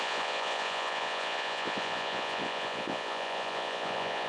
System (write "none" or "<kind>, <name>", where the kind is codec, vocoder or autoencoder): vocoder, Vocos